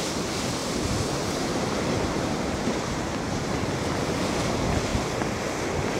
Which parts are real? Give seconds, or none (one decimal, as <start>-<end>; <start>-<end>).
0.0-0.6; 3.0-6.0